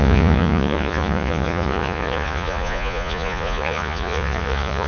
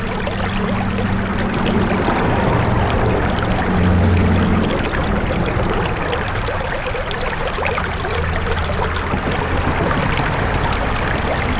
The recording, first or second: second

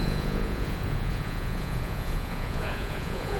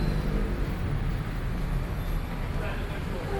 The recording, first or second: second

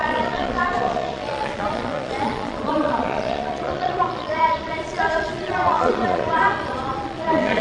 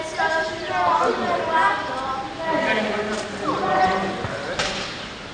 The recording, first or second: second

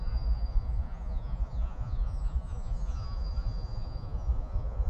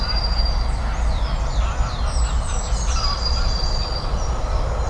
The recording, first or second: second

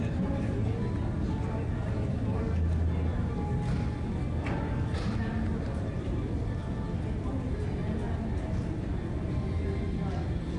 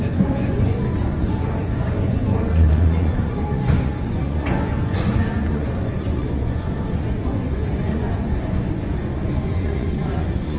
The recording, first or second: first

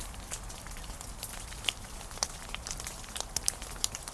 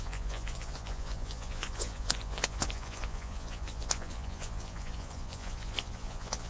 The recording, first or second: first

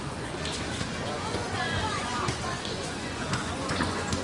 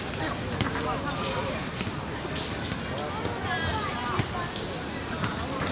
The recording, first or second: second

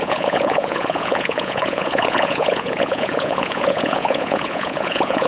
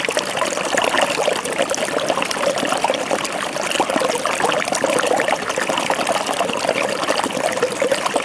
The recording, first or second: second